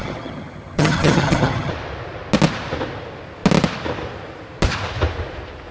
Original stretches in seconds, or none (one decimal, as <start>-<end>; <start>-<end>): 1.7-5.7